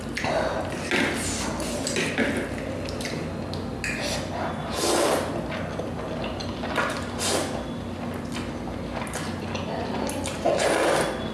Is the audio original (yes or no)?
yes